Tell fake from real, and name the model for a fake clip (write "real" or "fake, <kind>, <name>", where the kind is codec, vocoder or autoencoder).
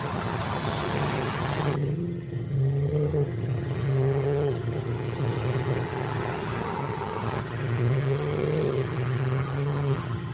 fake, vocoder, HiFi-GAN